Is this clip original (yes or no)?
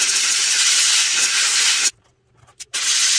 no